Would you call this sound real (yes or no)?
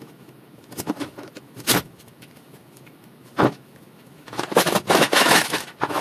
no